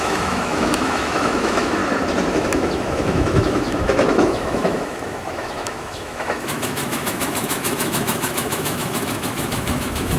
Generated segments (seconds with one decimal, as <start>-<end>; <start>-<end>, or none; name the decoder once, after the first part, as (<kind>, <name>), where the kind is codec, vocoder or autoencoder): 0.0-1.8 (autoencoder, DAC-VAE); 2.3-10.2